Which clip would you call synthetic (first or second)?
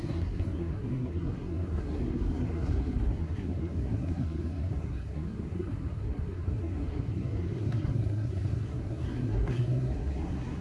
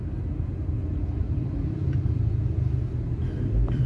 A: first